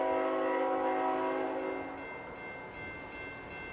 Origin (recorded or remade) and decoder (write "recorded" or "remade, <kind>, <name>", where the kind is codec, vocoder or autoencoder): recorded